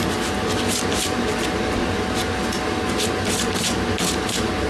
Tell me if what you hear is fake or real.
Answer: real